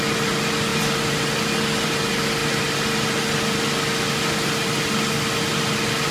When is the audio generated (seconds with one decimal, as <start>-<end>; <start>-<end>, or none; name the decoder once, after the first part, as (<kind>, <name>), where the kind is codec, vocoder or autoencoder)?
none